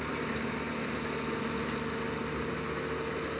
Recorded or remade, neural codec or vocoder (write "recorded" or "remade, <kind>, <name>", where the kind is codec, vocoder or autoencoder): recorded